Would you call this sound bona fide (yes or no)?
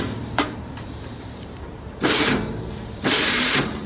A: no